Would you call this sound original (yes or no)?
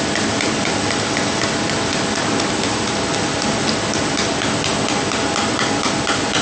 yes